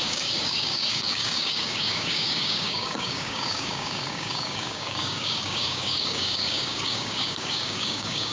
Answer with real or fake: fake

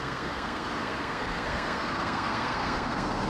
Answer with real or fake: fake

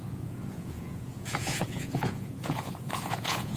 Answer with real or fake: fake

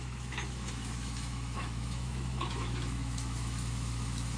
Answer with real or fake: fake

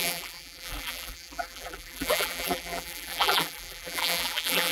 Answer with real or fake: fake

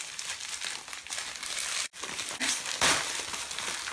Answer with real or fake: real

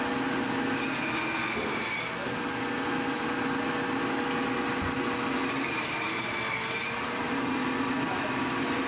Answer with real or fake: real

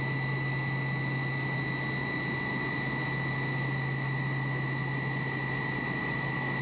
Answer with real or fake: real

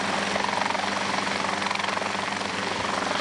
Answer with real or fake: real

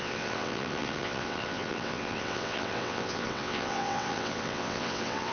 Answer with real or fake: fake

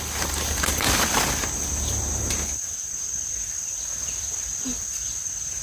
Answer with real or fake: real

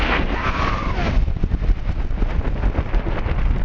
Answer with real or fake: real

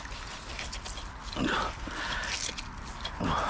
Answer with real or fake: real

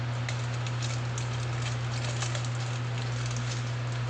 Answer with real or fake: real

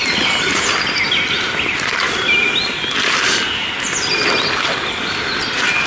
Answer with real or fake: real